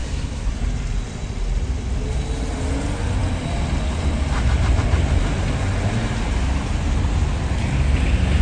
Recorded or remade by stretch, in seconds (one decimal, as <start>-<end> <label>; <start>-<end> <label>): 0.0-0.5 remade; 0.5-8.4 recorded